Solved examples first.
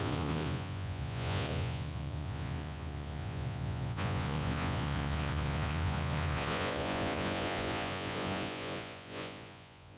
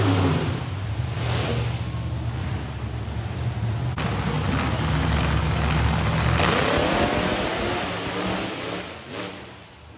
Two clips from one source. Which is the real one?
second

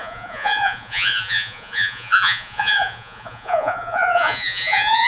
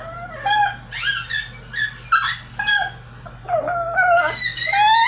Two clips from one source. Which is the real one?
second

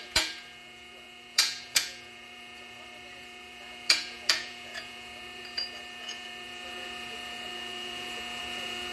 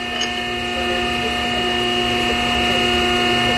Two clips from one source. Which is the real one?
second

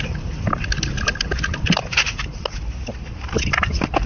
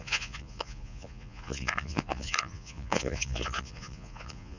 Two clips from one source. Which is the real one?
first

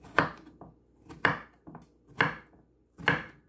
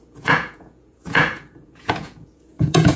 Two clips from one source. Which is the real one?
first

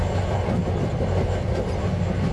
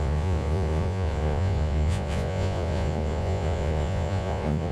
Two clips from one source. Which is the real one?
first